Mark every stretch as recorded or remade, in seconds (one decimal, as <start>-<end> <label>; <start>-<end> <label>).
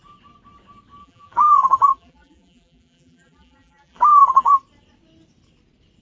0.0-1.0 recorded; 1.0-4.6 remade; 4.6-6.0 recorded